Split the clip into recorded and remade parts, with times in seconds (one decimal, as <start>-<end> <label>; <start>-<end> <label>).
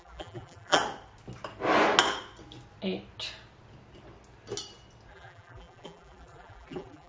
0.0-0.8 remade; 0.8-5.1 recorded; 5.1-7.1 remade